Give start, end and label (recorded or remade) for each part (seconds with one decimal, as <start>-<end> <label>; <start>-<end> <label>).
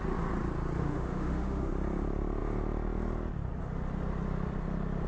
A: 0.0-0.8 recorded; 0.8-1.7 remade; 1.7-5.1 recorded